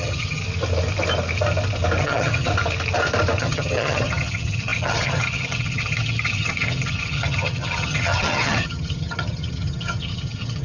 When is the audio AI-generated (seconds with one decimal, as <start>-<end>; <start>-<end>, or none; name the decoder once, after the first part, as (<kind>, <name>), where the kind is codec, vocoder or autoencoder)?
0.0-0.4 (vocoder, HiFi-GAN); 2.0-2.5; 3.4-10.6